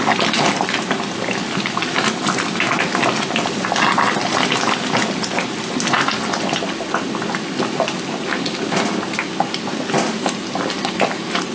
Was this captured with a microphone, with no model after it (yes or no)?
yes